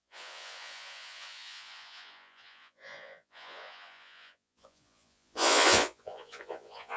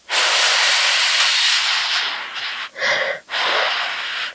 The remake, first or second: first